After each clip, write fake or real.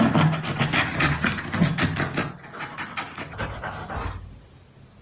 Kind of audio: real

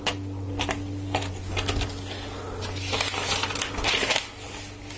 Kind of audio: real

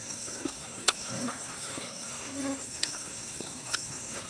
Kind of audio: fake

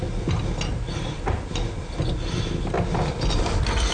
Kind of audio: real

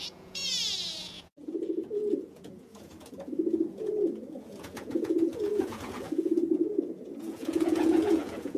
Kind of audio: fake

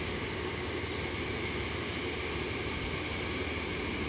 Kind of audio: real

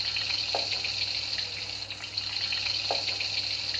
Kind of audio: real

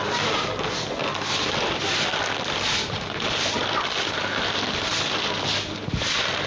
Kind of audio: real